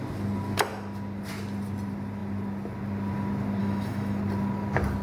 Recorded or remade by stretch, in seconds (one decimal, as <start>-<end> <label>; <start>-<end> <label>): 0.0-3.6 recorded; 3.6-4.2 remade; 4.2-5.0 recorded